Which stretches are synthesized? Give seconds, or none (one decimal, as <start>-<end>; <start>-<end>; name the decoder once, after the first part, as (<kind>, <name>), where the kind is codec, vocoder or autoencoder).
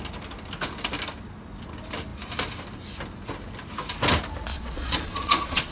4.5-5.7 (vocoder, Vocos)